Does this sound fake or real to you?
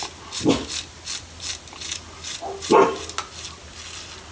real